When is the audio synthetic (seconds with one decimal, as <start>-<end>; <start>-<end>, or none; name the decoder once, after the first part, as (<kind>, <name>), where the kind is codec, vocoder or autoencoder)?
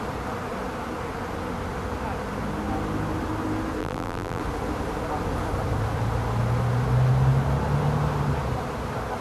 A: 3.8-4.4 (vocoder, BigVGAN v2)